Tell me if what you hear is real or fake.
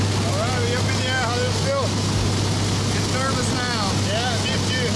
real